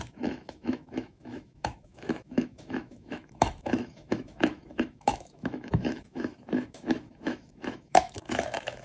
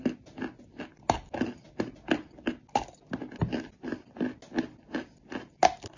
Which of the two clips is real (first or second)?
second